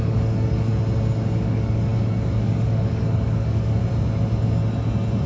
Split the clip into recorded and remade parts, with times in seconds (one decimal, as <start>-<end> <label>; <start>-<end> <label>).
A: 0.0-0.7 remade; 0.7-1.4 recorded; 1.4-3.8 remade; 3.8-5.3 recorded